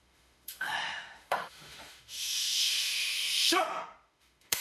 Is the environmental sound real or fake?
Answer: fake